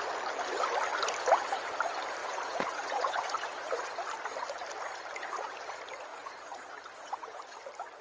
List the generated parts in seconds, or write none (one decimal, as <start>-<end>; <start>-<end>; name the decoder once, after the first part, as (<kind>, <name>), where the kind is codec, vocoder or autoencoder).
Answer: 2.2-3.9 (vocoder, Vocos); 6.1-7.4